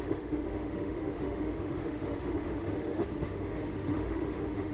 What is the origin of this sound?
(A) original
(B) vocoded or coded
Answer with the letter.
B